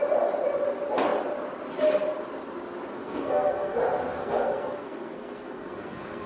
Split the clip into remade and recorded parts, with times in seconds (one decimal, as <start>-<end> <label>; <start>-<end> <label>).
0.0-2.9 recorded; 2.9-3.8 remade; 3.8-4.2 recorded; 4.2-6.3 remade